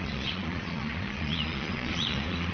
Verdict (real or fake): fake